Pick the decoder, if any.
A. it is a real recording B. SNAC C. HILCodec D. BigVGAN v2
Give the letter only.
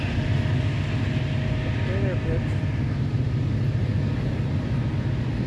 A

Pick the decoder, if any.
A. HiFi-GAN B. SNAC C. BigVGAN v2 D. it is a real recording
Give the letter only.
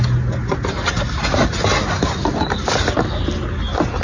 D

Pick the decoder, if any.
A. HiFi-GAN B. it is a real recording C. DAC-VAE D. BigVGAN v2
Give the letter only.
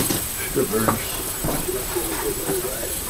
D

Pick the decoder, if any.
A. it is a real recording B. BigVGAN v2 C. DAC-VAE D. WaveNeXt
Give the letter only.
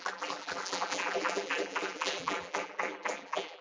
B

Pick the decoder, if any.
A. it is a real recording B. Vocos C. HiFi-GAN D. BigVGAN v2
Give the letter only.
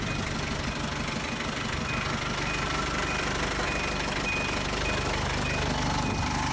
A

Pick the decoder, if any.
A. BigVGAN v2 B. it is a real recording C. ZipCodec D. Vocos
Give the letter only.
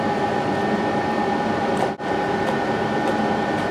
A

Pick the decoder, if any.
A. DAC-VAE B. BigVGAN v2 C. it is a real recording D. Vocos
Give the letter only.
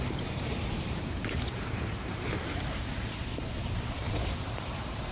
B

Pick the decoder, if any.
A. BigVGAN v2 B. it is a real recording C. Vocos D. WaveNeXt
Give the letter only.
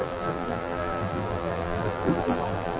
A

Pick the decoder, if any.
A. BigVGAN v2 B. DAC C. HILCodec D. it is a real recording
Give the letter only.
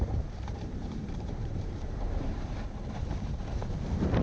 A